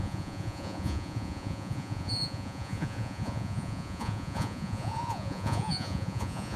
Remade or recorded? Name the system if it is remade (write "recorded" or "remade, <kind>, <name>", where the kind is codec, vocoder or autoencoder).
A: remade, vocoder, Vocos